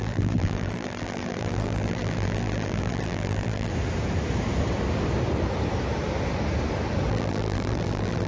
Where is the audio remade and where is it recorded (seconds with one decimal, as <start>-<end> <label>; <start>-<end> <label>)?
0.0-3.7 remade; 3.7-7.1 recorded; 7.1-8.3 remade